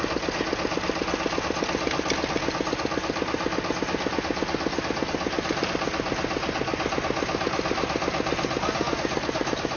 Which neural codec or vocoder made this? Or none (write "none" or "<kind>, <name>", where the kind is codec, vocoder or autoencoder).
none